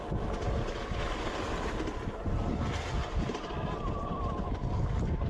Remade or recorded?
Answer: recorded